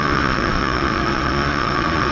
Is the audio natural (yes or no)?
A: no